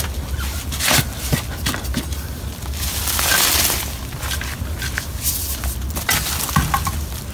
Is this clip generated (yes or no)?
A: no